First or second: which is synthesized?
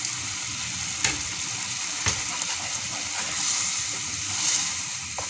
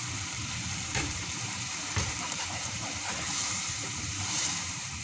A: second